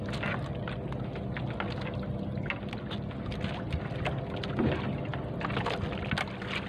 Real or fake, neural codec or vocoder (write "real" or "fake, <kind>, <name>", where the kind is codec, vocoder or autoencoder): real